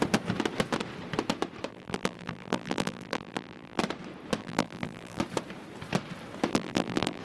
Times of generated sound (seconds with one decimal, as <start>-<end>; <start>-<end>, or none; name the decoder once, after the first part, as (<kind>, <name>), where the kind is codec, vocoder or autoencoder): 1.7-3.8 (vocoder, BigVGAN v2); 4.4-5.2; 6.5-7.2